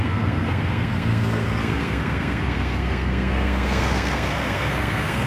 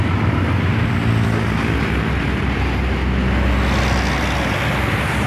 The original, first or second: second